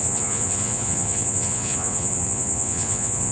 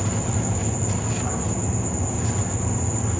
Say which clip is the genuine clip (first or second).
second